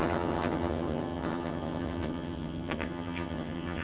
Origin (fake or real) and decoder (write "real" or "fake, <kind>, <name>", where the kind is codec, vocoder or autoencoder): fake, vocoder, HiFi-GAN